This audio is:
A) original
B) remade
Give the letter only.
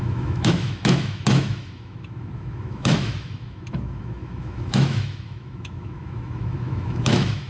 B